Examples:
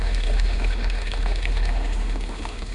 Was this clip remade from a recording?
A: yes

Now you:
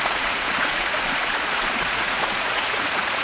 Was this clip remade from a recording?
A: yes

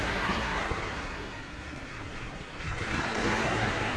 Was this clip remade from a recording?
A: yes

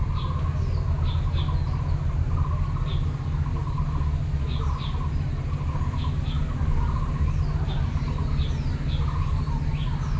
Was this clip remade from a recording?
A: no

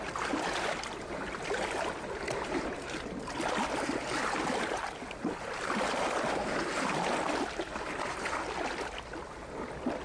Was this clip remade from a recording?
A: no